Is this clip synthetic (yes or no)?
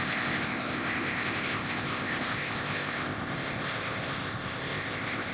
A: yes